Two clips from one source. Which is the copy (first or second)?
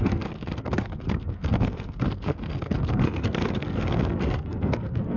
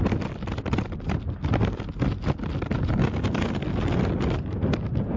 first